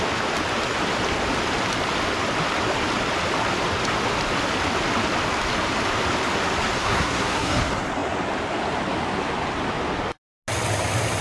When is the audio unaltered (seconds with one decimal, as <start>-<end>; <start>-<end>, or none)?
0.0-6.8; 7.6-11.2